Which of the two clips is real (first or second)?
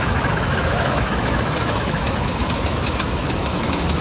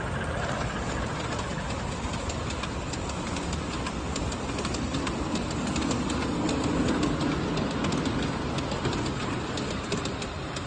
second